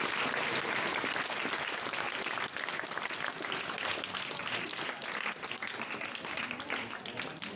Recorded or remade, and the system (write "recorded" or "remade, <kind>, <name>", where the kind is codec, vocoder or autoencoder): recorded